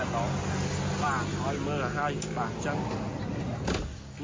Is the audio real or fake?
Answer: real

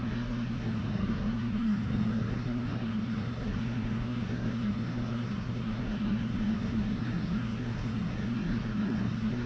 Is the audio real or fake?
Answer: fake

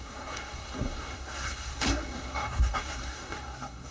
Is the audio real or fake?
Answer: fake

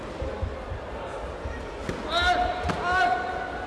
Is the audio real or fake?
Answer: real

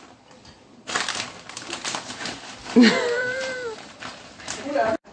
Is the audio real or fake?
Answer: fake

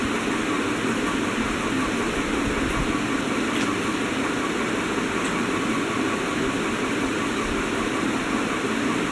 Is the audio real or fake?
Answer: real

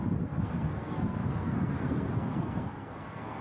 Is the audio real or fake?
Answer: fake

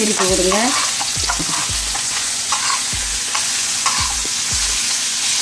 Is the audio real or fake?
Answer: fake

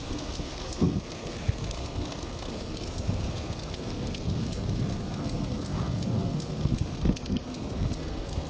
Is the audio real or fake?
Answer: fake